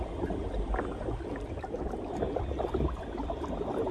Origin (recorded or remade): recorded